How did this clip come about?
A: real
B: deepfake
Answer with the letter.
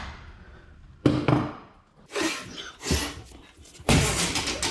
A